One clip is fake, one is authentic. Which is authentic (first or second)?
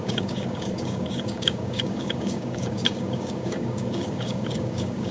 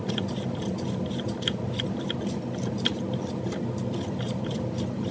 second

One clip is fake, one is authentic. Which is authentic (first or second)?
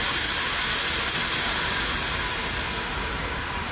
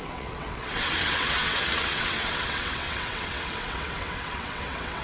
first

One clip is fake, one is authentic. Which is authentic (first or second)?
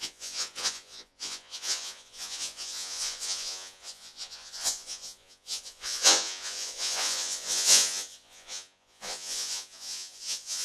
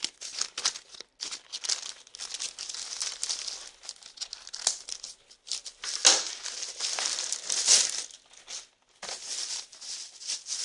second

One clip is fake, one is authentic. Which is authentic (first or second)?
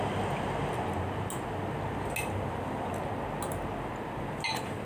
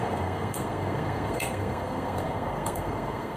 first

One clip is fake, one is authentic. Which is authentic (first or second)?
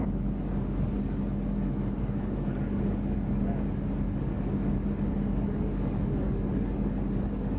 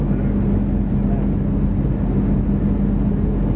second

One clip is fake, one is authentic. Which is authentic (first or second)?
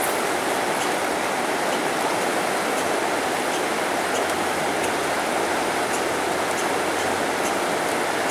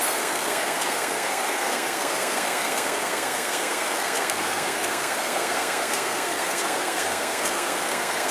first